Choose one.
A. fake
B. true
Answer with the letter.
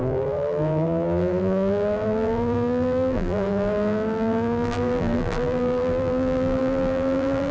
A